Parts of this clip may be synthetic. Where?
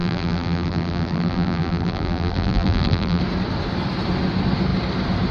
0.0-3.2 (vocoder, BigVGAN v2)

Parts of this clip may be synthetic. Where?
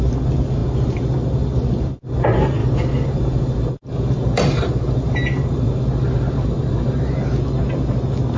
2.6-7.1 (vocoder, BigVGAN v2)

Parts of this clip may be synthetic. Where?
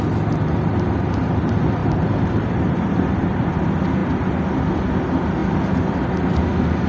1.8-3.5 (vocoder, BigVGAN v2)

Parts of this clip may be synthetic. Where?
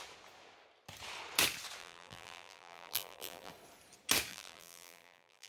1.8-3.5 (vocoder, BigVGAN v2); 4.3-5.5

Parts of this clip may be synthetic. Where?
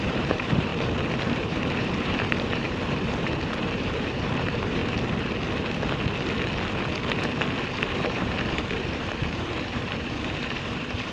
0.0-0.7 (vocoder, BigVGAN v2); 1.3-4.8; 7.8-11.1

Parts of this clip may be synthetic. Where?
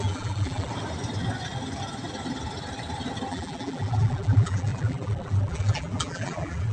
0.0-0.7 (vocoder, BigVGAN v2); 3.3-6.7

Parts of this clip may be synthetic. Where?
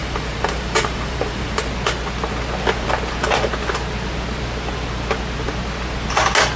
0.0-1.7 (vocoder, BigVGAN v2)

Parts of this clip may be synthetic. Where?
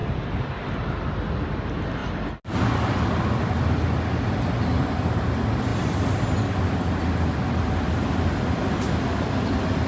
0.0-0.6 (vocoder, BigVGAN v2)